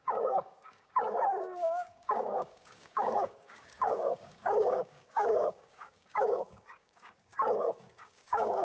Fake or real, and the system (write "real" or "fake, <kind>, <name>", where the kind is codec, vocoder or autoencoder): fake, codec, DAC